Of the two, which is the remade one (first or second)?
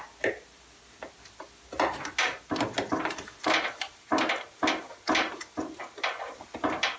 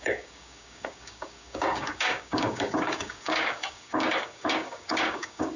second